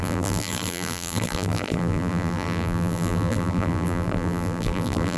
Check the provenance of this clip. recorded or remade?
remade